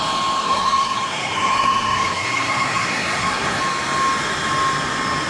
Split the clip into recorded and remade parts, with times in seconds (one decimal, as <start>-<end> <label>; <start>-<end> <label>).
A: 0.0-0.4 recorded; 0.4-3.6 remade; 3.6-5.3 recorded